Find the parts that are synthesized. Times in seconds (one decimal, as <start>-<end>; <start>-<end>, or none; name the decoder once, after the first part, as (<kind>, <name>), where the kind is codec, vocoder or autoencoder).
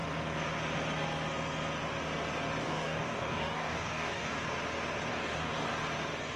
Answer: 2.6-4.3 (codec, DAC); 5.1-5.7